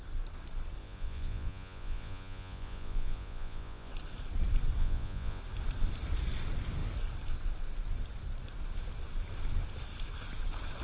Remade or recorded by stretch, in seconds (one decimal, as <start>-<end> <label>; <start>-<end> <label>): 0.0-0.8 recorded; 0.8-3.9 remade; 3.9-4.8 recorded; 4.8-5.4 remade; 5.4-10.8 recorded